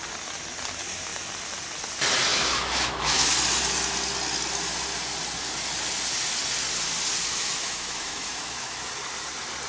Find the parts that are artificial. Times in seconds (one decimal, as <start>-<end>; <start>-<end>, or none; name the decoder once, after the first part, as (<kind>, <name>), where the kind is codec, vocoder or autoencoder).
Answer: 2.3-3.3 (autoencoder, DAC-VAE); 7.3-8.9